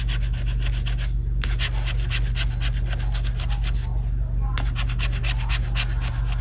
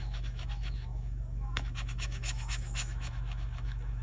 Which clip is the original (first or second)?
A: first